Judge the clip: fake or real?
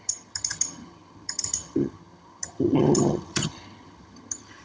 fake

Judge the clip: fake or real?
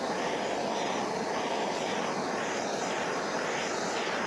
real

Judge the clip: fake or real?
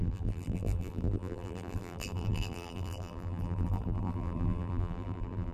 fake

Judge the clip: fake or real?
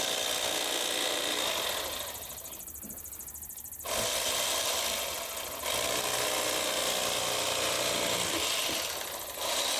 real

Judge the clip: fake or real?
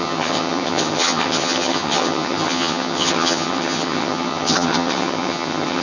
fake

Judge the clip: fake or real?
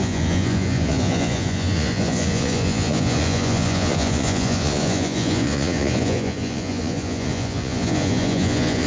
fake